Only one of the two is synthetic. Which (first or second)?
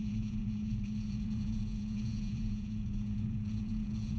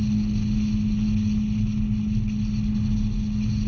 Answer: first